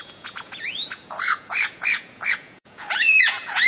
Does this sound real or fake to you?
fake